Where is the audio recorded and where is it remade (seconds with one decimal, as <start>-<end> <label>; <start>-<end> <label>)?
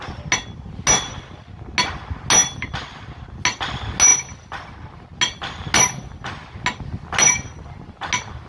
0.0-8.5 recorded